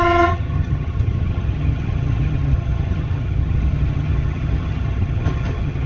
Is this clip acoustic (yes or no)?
no